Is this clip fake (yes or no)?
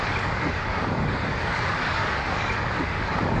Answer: yes